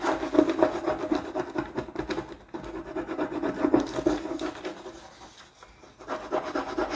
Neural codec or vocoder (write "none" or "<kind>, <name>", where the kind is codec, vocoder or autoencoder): none